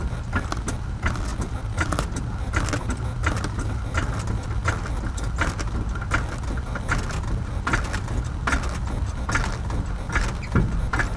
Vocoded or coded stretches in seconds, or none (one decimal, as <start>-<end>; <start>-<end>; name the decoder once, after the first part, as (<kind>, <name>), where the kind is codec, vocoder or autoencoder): none